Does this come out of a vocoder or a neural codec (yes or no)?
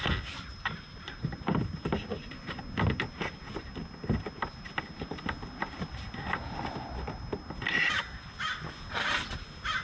no